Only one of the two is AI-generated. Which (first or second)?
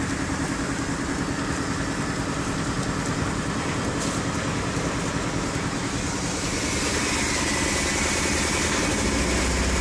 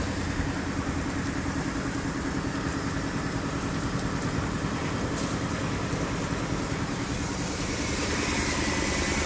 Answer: second